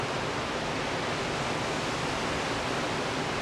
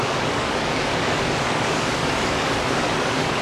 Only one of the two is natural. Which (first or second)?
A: first